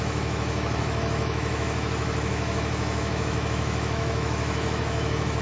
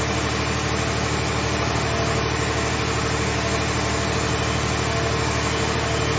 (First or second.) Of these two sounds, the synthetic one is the first